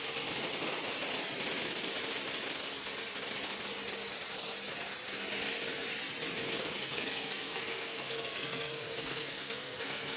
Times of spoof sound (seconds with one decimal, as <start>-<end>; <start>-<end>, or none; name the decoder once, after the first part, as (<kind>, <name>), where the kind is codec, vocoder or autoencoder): 6.6-10.2 (codec, SNAC)